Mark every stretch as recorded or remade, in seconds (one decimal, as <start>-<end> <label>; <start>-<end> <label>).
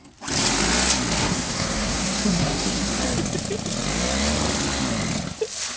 0.0-1.2 recorded; 1.2-3.0 remade; 3.0-5.8 recorded